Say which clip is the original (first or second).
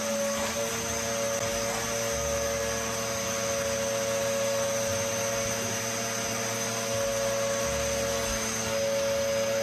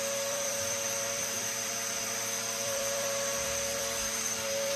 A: first